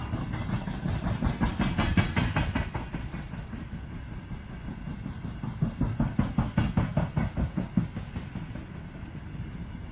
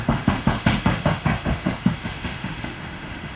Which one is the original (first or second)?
first